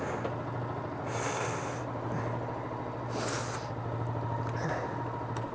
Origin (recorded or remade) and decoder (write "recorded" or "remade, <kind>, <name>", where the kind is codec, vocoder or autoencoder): recorded